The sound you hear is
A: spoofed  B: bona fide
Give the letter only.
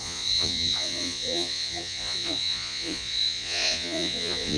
A